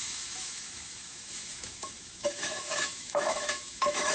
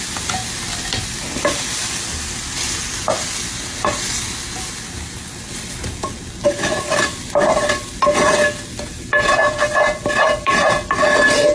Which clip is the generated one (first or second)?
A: first